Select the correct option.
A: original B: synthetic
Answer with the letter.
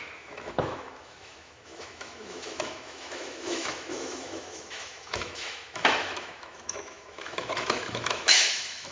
B